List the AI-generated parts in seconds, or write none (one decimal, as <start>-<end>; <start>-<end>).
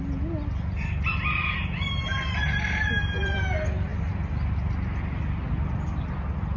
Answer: none